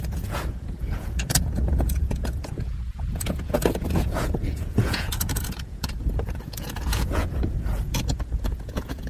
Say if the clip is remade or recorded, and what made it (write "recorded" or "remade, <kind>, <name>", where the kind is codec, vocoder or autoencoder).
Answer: remade, vocoder, Vocos